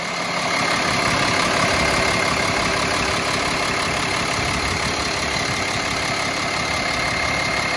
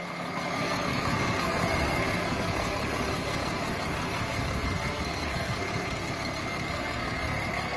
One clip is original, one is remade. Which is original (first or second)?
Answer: first